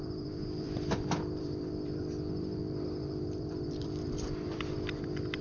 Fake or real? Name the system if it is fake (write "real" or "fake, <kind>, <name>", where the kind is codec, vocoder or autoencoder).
fake, vocoder, BigVGAN v2